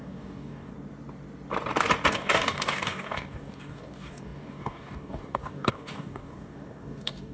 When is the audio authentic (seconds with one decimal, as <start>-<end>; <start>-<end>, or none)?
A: 0.7-2.1